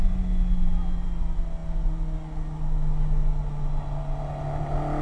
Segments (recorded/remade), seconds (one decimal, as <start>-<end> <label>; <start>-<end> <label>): 0.0-5.0 recorded